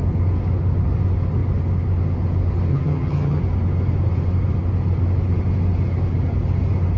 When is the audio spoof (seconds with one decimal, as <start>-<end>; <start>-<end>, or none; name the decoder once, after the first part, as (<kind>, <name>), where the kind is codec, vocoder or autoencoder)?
2.7-3.4 (vocoder, HiFi-GAN)

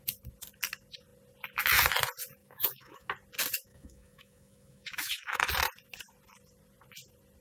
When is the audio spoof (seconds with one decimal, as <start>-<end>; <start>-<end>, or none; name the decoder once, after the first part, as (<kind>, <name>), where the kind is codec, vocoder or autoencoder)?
2.4-3.1 (autoencoder, DAC-VAE); 3.7-5.5

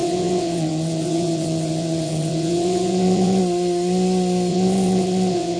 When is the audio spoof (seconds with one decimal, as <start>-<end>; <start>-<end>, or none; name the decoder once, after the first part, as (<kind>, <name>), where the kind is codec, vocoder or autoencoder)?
0.0-3.4 (vocoder, WaveNeXt); 4.5-5.6

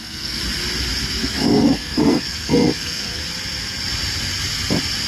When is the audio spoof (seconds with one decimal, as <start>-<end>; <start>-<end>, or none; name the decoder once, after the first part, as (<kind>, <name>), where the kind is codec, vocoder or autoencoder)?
0.0-0.4 (codec, SNAC); 1.2-3.2

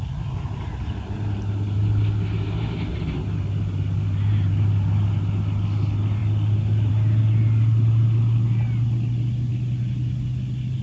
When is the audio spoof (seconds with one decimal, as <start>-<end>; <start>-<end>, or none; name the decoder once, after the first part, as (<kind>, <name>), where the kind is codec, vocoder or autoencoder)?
none

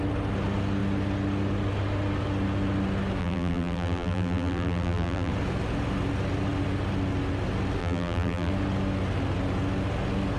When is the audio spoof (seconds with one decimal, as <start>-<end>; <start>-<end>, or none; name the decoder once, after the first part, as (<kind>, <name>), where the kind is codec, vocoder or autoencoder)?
3.2-5.3 (vocoder, BigVGAN v2); 7.8-8.5

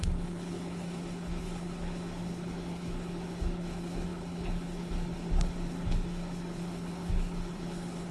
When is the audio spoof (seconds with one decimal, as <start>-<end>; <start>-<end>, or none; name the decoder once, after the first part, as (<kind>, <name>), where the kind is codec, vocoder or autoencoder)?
0.0-8.1 (codec, HILCodec)